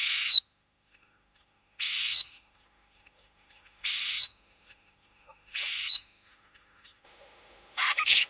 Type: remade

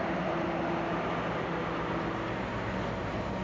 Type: recorded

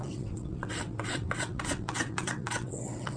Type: remade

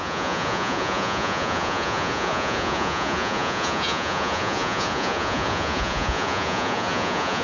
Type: remade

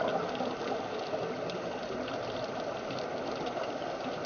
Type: recorded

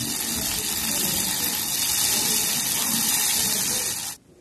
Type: recorded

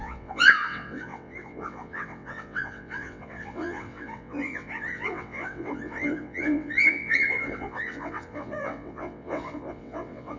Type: remade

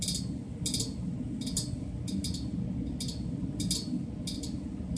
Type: recorded